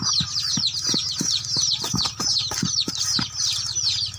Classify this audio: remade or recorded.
recorded